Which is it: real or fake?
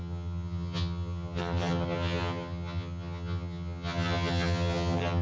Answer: fake